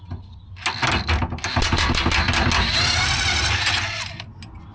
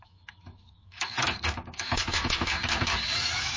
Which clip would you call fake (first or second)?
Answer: second